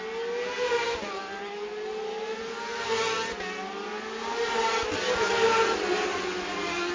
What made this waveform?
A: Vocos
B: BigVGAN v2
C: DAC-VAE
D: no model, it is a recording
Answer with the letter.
D